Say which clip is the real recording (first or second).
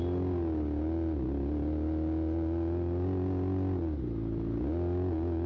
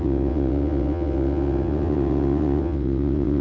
first